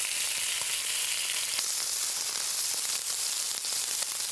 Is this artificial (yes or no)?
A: no